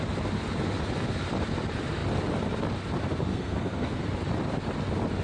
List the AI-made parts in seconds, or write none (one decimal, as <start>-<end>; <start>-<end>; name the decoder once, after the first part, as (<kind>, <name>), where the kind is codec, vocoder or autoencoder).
3.3-4.0 (codec, SNAC)